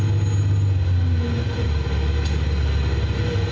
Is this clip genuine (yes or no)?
yes